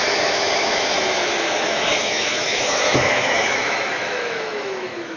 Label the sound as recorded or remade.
remade